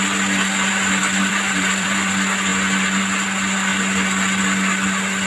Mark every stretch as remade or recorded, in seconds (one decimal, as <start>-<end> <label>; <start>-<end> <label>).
0.0-1.0 recorded; 1.0-2.1 remade; 2.1-5.3 recorded